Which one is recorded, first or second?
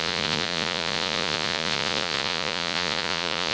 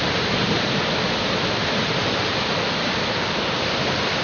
second